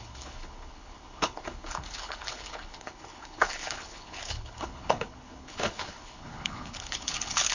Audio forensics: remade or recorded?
remade